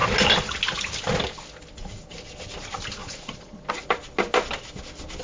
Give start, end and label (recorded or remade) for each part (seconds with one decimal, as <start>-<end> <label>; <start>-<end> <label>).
0.0-3.0 recorded; 3.0-3.7 remade; 3.7-5.2 recorded